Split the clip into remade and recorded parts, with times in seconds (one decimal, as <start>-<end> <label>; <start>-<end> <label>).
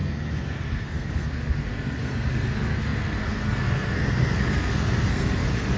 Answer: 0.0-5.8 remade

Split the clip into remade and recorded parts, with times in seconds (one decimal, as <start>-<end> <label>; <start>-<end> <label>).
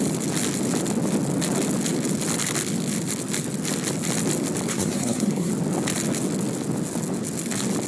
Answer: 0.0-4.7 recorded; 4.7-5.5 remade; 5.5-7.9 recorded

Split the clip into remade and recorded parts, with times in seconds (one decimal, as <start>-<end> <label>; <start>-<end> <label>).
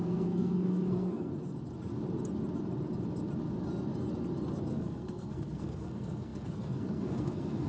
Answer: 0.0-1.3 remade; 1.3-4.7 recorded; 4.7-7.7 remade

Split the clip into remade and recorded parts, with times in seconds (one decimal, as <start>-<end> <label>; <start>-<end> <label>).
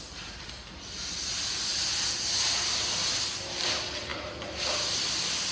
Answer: 0.0-5.5 recorded